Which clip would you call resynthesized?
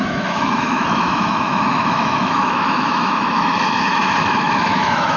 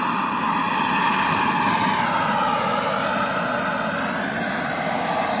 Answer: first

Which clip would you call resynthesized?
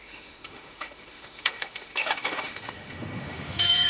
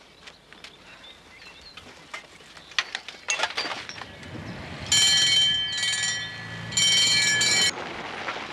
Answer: first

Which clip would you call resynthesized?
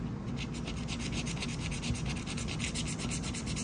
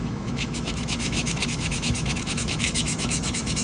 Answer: second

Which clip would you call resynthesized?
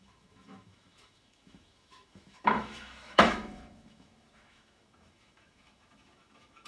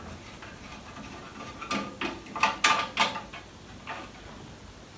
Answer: first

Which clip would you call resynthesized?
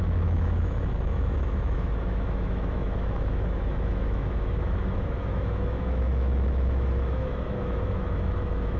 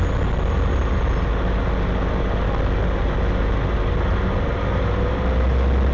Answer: first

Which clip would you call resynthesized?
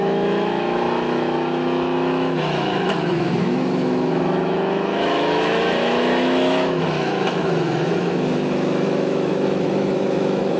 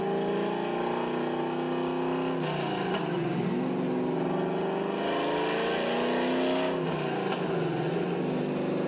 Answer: first